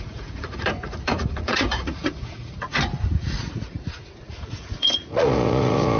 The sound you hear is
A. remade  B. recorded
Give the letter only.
A